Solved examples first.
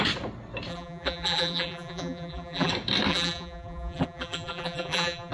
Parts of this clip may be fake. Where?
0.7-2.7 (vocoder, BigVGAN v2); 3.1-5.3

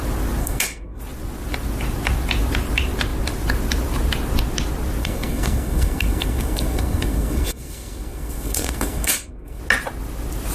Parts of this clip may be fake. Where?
0.4-1.0 (codec, SNAC); 5.0-9.6

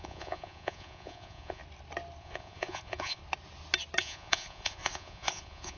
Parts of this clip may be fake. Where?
0.0-1.6 (vocoder, Vocos); 2.2-3.2; 4.0-5.8

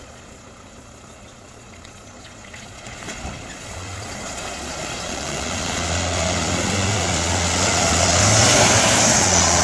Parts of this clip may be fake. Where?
0.0-8.2 (vocoder, Vocos); 9.1-9.6

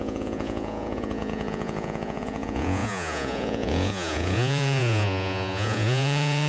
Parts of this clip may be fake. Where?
0.0-6.5 (vocoder, Vocos)

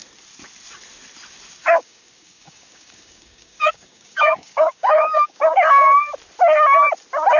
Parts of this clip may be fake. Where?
1.6-6.0 (codec, DAC)

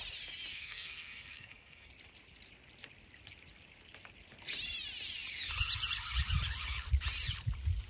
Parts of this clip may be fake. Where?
0.5-1.9 (codec, SNAC)